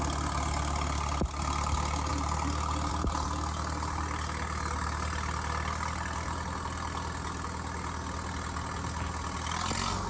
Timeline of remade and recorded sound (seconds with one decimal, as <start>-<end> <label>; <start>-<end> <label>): 0.0-10.1 recorded